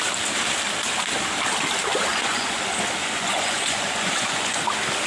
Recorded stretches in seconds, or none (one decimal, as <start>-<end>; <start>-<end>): 0.0-2.1; 2.6-3.0; 4.6-5.1